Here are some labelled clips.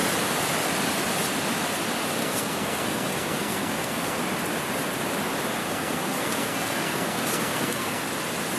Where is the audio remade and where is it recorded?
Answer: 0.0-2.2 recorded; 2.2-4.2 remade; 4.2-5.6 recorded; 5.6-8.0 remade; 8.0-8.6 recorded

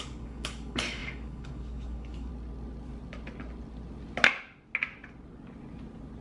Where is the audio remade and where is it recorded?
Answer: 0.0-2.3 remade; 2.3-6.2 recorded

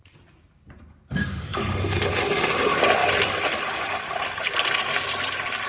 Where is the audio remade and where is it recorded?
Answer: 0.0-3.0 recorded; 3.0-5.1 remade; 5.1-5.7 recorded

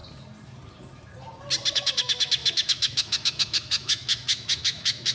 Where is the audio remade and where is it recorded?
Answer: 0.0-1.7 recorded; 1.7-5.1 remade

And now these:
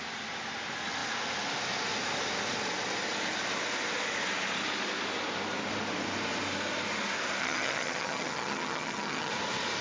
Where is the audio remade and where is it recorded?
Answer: 0.0-7.4 recorded; 7.4-9.3 remade; 9.3-9.8 recorded

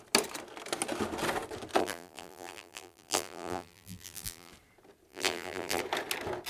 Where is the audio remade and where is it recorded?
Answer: 0.0-1.8 recorded; 1.8-4.5 remade; 4.5-5.1 recorded; 5.1-5.8 remade; 5.8-6.5 recorded